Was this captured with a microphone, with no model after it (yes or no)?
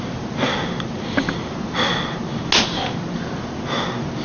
yes